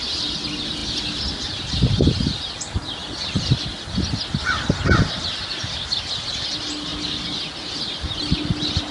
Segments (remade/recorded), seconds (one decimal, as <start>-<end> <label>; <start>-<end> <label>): 0.0-8.9 recorded